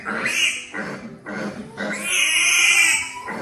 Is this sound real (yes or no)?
yes